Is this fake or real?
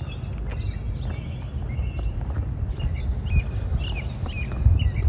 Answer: real